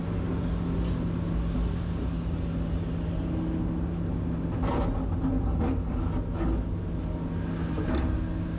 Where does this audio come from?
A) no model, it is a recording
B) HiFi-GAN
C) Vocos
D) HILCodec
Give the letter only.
A